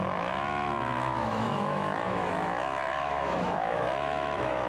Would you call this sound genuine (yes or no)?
no